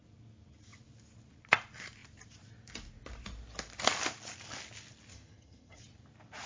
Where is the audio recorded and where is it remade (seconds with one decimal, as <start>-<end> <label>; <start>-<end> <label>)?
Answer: 0.0-5.1 recorded; 5.1-5.8 remade; 5.8-6.5 recorded